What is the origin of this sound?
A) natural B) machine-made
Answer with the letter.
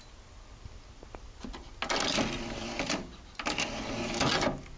A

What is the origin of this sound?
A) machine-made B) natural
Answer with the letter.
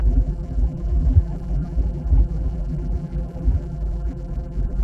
A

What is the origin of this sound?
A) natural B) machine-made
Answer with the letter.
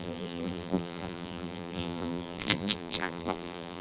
B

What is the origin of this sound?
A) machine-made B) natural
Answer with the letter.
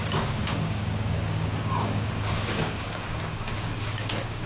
A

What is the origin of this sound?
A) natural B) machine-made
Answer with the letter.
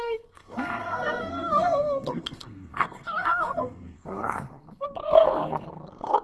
B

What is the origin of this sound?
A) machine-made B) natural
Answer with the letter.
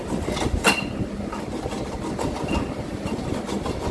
B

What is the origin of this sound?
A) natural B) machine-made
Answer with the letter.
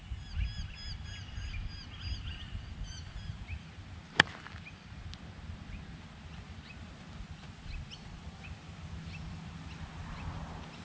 A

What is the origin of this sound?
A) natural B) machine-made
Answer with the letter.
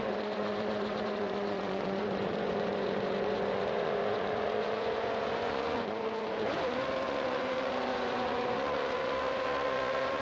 B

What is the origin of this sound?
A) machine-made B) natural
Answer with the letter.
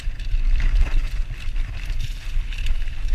B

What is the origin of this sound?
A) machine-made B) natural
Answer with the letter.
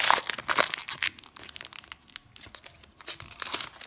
B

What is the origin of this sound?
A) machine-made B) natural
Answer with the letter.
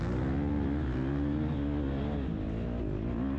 B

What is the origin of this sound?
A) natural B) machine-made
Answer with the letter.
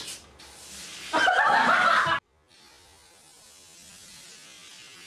A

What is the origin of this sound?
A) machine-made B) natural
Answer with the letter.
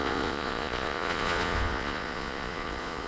A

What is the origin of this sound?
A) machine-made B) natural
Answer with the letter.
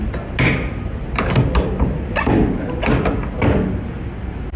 B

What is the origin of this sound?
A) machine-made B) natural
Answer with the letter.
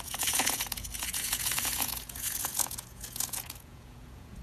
A